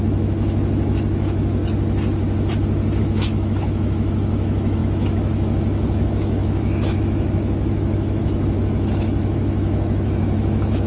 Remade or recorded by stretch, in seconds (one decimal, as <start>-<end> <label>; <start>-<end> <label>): 0.0-1.6 remade; 1.6-3.0 recorded; 3.0-10.9 remade

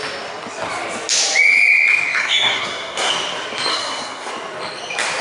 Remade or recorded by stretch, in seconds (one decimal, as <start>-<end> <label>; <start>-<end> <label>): 0.0-2.2 recorded; 2.2-3.1 remade; 3.1-3.7 recorded; 3.7-4.3 remade; 4.3-5.2 recorded

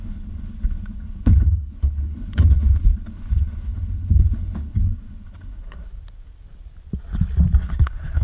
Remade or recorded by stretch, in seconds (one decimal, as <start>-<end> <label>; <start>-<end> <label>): 0.0-5.9 remade; 5.9-7.6 recorded; 7.6-8.2 remade

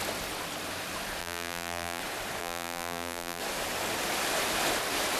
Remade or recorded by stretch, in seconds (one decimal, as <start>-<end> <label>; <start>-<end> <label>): 0.0-1.2 recorded; 1.2-2.0 remade; 2.0-2.4 recorded; 2.4-3.4 remade; 3.4-5.2 recorded

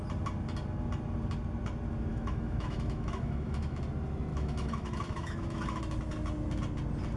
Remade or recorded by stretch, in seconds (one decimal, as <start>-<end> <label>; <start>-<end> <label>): 0.0-2.1 recorded; 2.1-3.8 remade; 3.8-4.3 recorded; 4.3-5.8 remade; 5.8-7.2 recorded

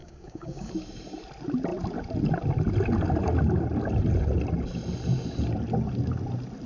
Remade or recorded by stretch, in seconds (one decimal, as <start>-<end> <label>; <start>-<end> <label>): 0.0-0.7 remade; 0.7-6.7 recorded